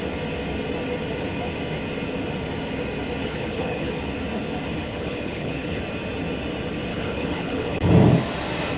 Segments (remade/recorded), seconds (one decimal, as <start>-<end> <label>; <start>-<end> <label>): 0.0-3.2 recorded; 3.2-3.9 remade; 3.9-4.8 recorded; 4.8-5.8 remade; 5.8-6.9 recorded; 6.9-7.9 remade; 7.9-8.8 recorded